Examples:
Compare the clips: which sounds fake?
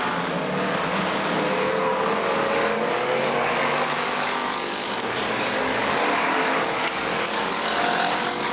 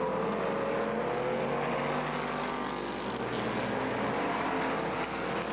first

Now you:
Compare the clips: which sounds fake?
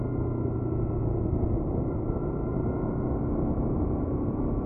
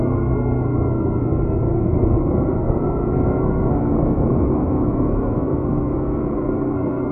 second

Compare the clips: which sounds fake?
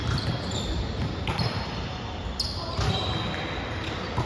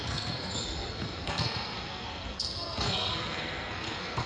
second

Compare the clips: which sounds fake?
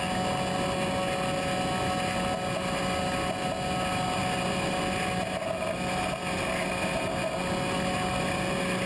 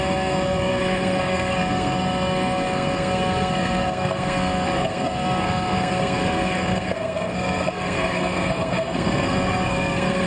second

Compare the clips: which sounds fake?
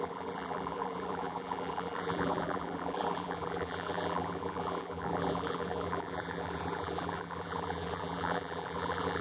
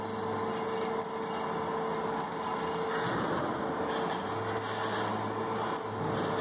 first